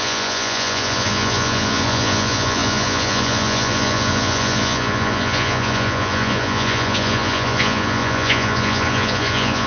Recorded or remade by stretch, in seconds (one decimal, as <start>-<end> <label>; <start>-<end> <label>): 0.0-9.7 remade